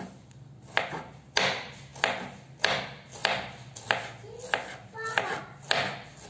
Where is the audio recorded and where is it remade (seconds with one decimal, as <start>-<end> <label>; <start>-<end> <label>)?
0.0-6.3 recorded